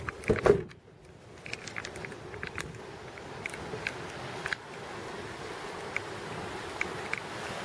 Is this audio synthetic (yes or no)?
no